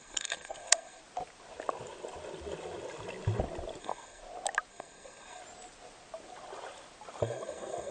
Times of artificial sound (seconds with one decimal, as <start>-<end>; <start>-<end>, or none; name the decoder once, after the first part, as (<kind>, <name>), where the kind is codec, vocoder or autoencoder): 0.0-1.0 (codec, SNAC); 3.8-4.2; 4.7-5.4; 7.2-7.9